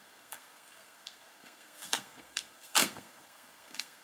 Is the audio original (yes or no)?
no